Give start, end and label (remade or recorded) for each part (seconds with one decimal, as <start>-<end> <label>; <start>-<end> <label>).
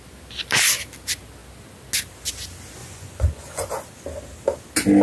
0.0-2.8 recorded; 2.8-3.7 remade; 3.7-5.0 recorded